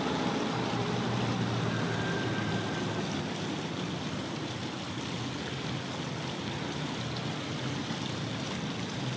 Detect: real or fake real